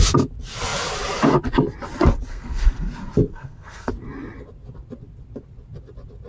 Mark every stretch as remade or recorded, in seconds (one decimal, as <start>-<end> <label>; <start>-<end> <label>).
0.0-2.3 recorded; 2.3-2.9 remade; 2.9-3.3 recorded; 3.3-3.9 remade; 3.9-6.3 recorded